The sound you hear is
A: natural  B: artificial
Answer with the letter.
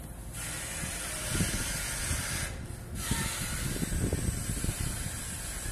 A